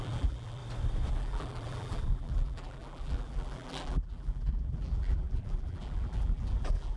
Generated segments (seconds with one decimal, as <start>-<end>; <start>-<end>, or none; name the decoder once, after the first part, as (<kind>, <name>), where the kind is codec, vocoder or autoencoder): 0.0-0.6 (vocoder, BigVGAN v2); 1.1-7.0